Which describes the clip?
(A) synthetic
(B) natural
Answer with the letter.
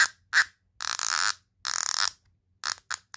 B